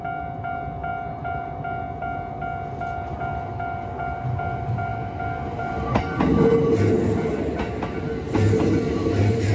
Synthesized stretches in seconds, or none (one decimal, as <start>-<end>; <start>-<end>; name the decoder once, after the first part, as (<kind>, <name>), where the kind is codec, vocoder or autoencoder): none